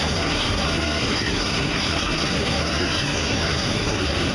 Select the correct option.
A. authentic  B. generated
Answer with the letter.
B